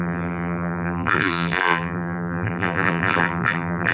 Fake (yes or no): yes